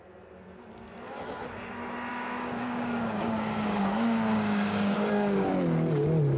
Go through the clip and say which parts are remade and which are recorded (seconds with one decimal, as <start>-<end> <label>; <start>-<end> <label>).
0.0-2.1 recorded; 2.1-5.5 remade; 5.5-6.4 recorded